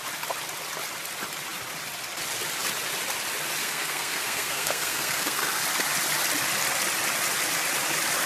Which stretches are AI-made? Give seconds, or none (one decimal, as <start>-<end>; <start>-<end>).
3.6-5.6